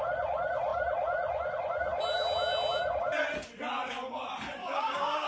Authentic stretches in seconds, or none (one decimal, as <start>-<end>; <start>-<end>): 0.0-4.6